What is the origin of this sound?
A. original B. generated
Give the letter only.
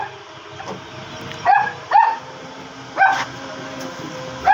A